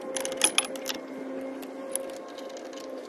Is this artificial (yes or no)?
no